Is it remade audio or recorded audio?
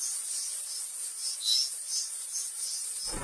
recorded